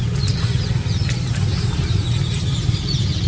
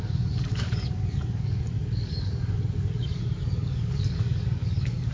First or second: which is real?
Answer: first